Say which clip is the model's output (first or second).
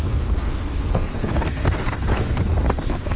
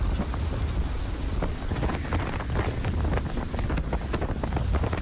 first